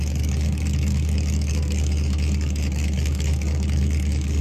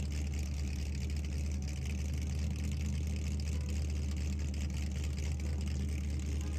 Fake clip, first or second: first